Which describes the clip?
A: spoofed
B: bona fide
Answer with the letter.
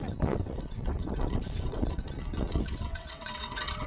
A